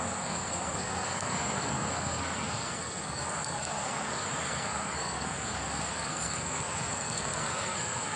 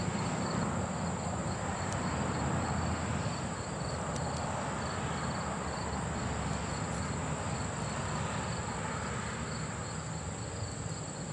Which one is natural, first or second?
second